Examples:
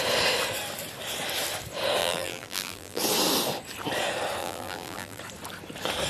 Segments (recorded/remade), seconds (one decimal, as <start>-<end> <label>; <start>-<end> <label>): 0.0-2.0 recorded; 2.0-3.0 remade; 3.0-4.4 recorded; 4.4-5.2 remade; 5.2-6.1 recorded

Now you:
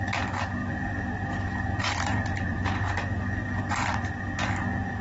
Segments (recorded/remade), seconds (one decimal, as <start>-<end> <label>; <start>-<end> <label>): 0.0-0.6 recorded; 0.6-3.6 remade; 3.6-5.0 recorded

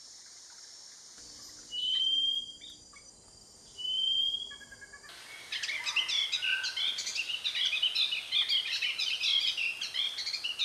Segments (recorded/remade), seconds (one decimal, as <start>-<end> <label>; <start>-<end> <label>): 0.0-10.6 recorded

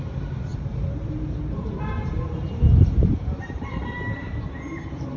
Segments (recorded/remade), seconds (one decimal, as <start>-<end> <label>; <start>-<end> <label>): 0.0-5.2 remade

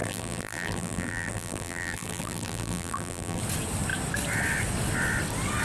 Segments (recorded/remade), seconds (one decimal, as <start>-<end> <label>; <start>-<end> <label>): 0.0-3.4 remade; 3.4-5.6 recorded

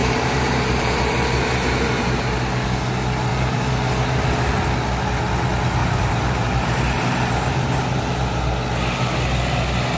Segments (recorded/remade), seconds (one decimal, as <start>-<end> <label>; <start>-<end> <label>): 0.0-1.0 remade; 1.0-3.3 recorded; 3.3-4.5 remade; 4.5-5.8 recorded; 5.8-7.8 remade; 7.8-10.0 recorded

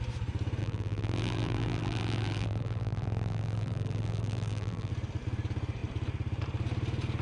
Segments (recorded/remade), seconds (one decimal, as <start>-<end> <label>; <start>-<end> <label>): 0.0-0.6 recorded; 0.6-4.9 remade; 4.9-7.2 recorded